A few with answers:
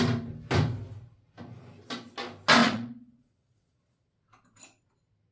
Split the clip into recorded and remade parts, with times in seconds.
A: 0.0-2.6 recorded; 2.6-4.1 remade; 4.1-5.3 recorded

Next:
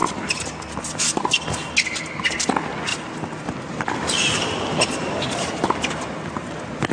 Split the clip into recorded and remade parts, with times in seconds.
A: 0.0-6.9 recorded

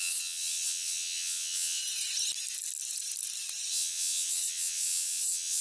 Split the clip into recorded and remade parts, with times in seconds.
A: 0.0-1.8 remade; 1.8-3.7 recorded; 3.7-5.6 remade

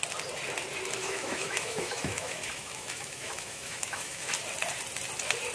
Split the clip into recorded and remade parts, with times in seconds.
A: 0.0-1.0 recorded; 1.0-4.3 remade; 4.3-5.5 recorded

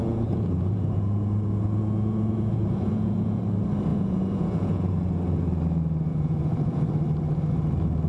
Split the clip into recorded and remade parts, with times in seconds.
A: 0.0-3.4 remade; 3.4-3.9 recorded; 3.9-4.9 remade; 4.9-6.1 recorded; 6.1-6.9 remade; 6.9-8.1 recorded

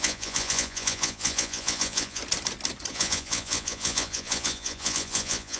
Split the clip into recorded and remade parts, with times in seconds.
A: 0.0-2.2 remade; 2.2-2.9 recorded; 2.9-5.6 remade